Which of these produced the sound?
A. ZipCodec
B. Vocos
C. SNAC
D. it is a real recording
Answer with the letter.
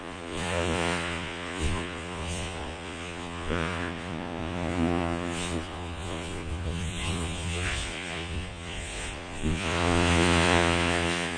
B